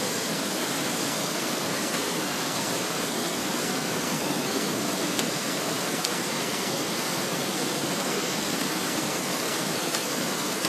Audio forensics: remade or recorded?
remade